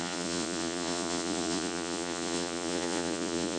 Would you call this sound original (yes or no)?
no